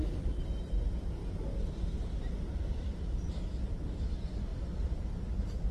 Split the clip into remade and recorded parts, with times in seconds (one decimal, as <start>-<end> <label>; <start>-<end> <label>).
0.0-5.7 recorded